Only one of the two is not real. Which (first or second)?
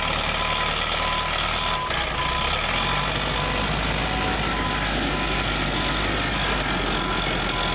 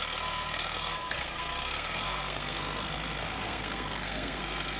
second